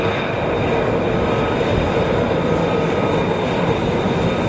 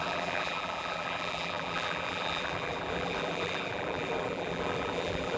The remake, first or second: second